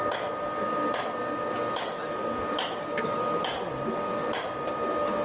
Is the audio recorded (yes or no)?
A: yes